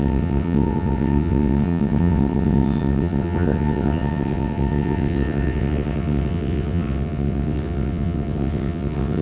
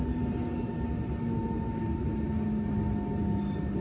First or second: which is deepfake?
first